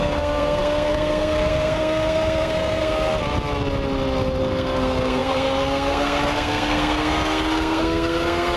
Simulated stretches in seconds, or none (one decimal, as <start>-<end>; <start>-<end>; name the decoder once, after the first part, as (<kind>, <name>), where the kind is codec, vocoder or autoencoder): 0.0-3.1 (codec, SNAC); 4.4-8.6